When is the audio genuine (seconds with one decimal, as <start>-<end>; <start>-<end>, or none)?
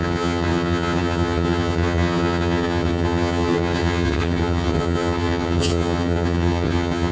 none